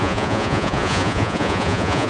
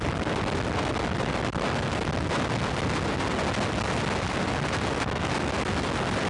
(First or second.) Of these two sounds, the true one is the second